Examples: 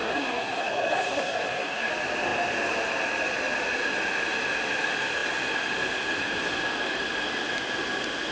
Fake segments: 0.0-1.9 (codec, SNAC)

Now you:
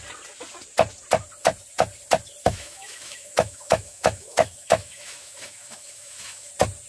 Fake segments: 2.4-6.5 (autoencoder, DAC-VAE)

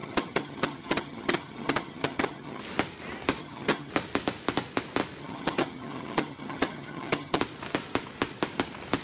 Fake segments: 0.0-2.6 (vocoder, HiFi-GAN); 3.4-3.9; 5.2-7.4